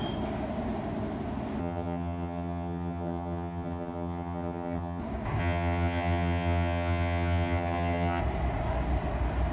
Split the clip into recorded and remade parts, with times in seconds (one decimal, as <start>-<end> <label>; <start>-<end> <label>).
0.0-1.6 recorded; 1.6-5.0 remade; 5.0-5.4 recorded; 5.4-8.2 remade; 8.2-9.5 recorded